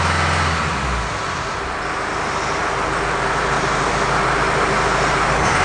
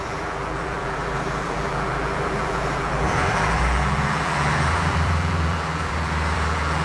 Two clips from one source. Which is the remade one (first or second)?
second